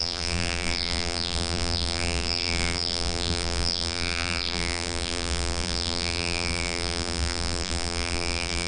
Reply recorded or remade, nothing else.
remade